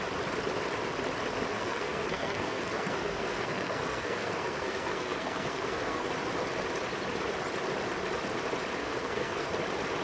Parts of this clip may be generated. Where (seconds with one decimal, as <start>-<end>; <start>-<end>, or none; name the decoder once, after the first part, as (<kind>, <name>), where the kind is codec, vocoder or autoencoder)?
1.5-6.1 (codec, SNAC); 8.8-9.5